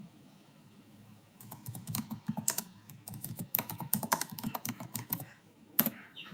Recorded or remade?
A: remade